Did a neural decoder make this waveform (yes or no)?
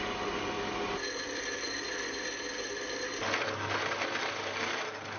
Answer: no